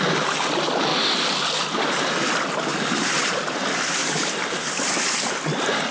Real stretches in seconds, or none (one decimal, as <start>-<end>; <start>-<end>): 0.0-2.7; 3.6-4.0; 4.6-5.9